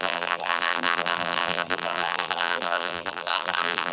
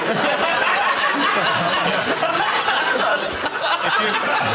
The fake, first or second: first